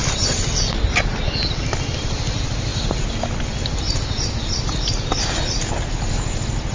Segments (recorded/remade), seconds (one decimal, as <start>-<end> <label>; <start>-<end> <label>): 0.0-6.7 recorded